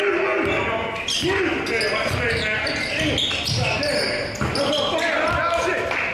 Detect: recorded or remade recorded